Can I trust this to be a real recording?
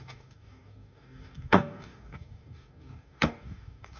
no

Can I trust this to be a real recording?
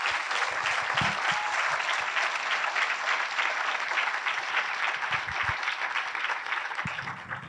yes